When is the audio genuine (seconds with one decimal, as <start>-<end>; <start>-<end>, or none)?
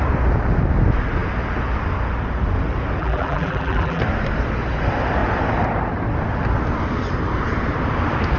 0.0-3.0; 4.0-8.4